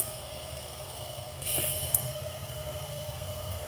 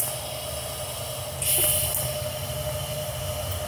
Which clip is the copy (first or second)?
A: first